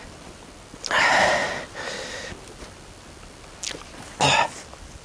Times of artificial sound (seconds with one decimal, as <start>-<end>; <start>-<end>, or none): none